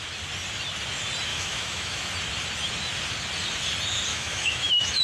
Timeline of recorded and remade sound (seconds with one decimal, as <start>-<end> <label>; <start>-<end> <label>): 0.0-1.3 recorded; 1.3-2.1 remade; 2.1-4.1 recorded; 4.1-5.0 remade